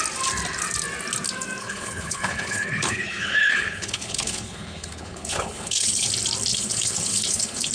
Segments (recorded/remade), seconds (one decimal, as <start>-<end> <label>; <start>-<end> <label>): 0.0-1.6 recorded; 1.6-6.1 remade; 6.1-6.5 recorded; 6.5-7.7 remade

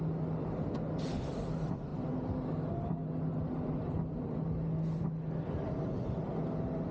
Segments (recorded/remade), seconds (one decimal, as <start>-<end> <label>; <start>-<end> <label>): 0.0-6.9 recorded